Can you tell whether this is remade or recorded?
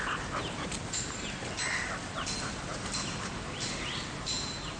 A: recorded